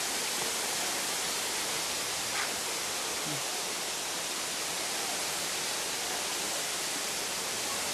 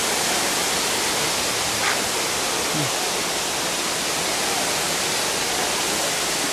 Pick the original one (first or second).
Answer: second